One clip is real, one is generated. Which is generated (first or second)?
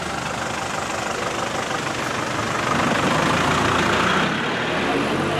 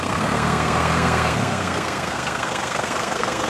second